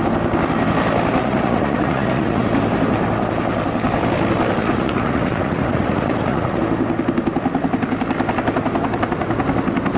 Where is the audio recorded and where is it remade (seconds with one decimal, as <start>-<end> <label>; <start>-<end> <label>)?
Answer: 0.0-1.2 recorded; 1.2-2.5 remade; 2.5-4.6 recorded; 4.6-6.6 remade; 6.6-10.0 recorded